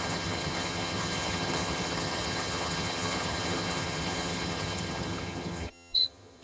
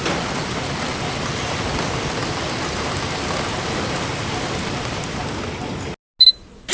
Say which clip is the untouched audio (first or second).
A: second